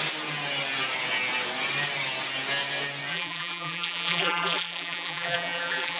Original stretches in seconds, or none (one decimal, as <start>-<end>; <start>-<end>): 0.0-3.1